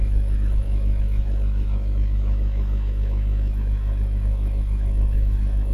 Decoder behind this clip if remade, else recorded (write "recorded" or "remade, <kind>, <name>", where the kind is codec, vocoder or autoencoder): remade, autoencoder, DAC-VAE